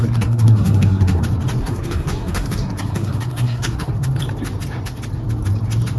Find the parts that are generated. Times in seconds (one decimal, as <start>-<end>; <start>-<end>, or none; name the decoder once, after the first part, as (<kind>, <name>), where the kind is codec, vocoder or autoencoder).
0.0-1.2 (codec, SNAC); 1.6-3.9

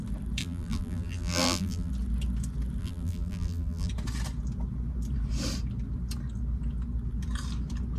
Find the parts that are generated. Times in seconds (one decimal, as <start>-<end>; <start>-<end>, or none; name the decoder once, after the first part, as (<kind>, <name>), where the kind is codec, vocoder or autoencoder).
0.4-1.9 (vocoder, BigVGAN v2); 2.8-3.9